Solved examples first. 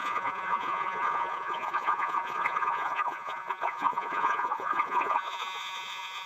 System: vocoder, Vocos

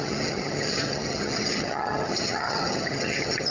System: vocoder, HiFi-GAN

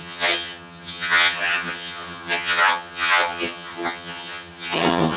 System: vocoder, HiFi-GAN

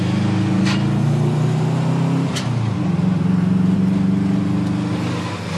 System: none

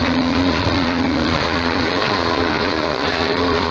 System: vocoder, Vocos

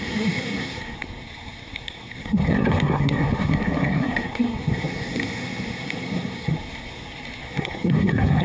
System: codec, SNAC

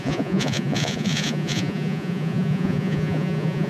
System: vocoder, Vocos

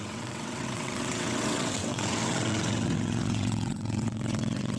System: vocoder, WaveNeXt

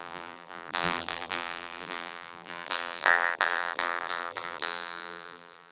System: vocoder, BigVGAN v2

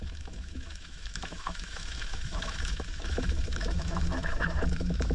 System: autoencoder, DAC-VAE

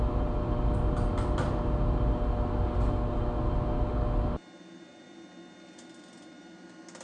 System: none